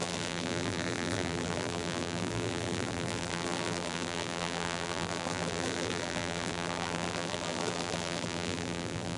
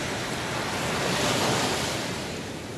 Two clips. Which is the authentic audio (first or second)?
second